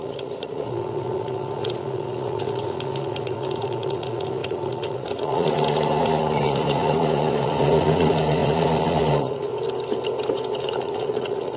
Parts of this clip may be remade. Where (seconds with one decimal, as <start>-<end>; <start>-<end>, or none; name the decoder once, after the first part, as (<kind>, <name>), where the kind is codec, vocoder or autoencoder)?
0.0-9.5 (vocoder, Vocos); 10.6-11.6